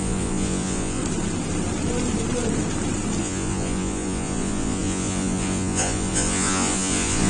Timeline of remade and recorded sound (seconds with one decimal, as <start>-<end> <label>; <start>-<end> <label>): 0.0-1.0 remade; 1.0-3.2 recorded; 3.2-7.3 remade